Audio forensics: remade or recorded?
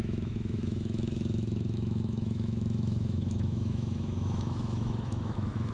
remade